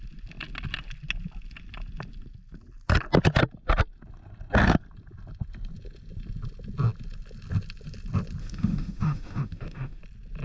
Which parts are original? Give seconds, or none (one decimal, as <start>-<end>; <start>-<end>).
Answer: 0.0-8.4; 10.0-10.4